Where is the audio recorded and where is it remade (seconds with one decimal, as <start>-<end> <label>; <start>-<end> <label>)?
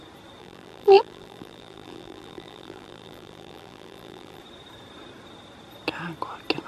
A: 0.0-0.4 recorded; 0.4-4.4 remade; 4.4-6.7 recorded